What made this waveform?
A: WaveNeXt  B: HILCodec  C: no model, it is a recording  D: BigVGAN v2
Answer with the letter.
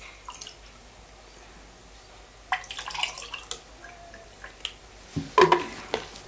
C